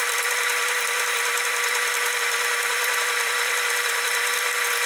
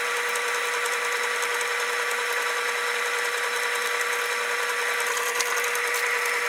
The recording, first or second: second